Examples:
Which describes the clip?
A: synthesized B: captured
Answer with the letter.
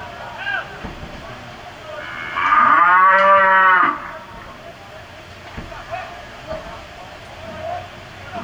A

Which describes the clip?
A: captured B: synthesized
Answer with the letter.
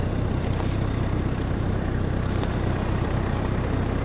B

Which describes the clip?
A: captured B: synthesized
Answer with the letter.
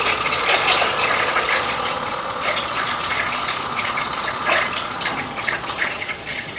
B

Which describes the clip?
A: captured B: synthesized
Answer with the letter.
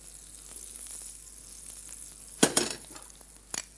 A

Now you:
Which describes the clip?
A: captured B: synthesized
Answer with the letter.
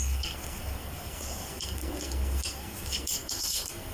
B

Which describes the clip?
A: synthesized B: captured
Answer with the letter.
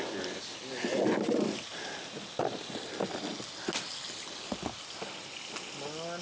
B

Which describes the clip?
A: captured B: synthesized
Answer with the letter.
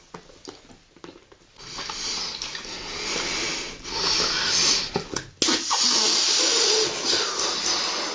A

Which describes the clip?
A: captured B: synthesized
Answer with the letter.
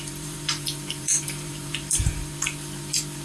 B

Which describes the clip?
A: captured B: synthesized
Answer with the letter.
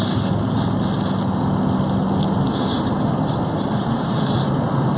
A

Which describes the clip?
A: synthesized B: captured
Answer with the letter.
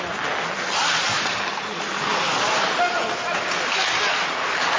B